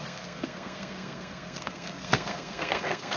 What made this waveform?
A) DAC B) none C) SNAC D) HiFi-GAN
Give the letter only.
C